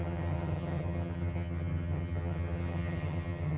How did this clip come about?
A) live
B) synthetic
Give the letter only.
B